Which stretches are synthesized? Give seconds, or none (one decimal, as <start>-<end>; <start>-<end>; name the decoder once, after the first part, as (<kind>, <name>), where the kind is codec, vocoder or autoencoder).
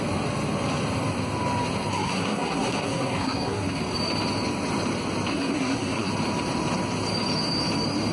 1.9-3.8 (codec, SNAC); 5.3-6.1